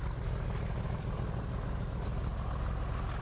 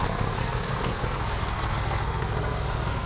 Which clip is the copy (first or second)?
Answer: second